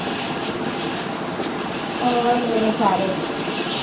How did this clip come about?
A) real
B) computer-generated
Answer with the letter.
B